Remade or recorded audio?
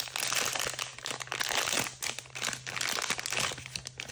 recorded